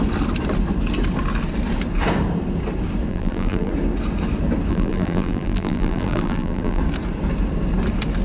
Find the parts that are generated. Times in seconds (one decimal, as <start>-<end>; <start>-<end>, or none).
3.1-3.7; 4.7-6.8